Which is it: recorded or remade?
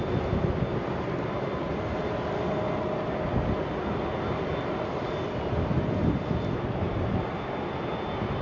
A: recorded